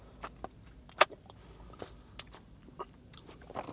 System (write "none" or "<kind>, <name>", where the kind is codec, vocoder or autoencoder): none